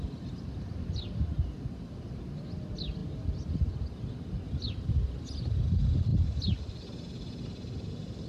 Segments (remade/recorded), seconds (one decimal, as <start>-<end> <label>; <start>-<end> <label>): 0.0-8.3 recorded